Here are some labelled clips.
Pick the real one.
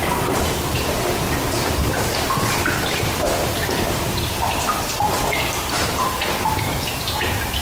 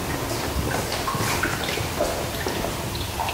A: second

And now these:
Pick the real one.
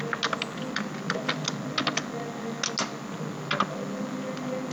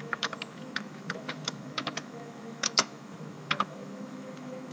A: first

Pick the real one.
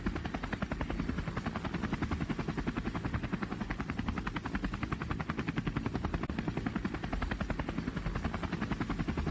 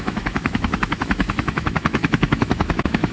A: first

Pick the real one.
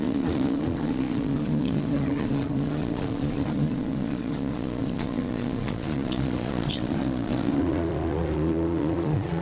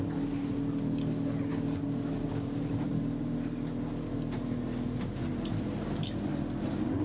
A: second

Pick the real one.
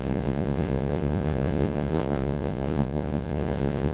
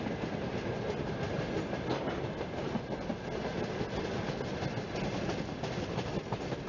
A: second